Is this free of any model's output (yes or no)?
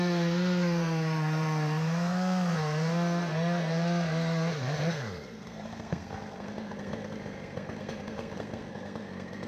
no